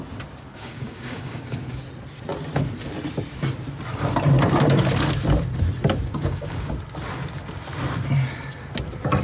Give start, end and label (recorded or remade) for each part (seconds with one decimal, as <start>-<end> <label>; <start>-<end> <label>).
0.0-0.5 recorded; 0.5-1.8 remade; 1.8-6.1 recorded; 6.1-6.7 remade; 6.7-9.2 recorded